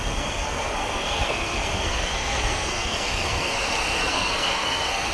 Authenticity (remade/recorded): remade